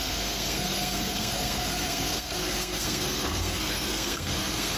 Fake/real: fake